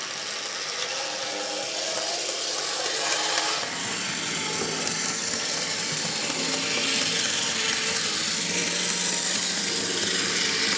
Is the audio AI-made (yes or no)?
no